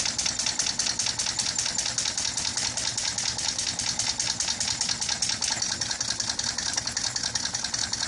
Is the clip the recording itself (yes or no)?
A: yes